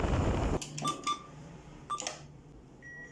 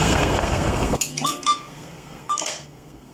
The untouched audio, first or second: first